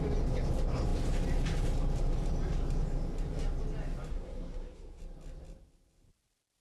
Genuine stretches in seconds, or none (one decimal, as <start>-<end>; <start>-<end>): 0.0-4.1; 5.0-6.6